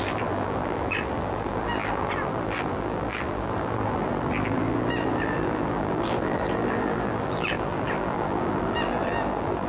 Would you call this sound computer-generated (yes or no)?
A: yes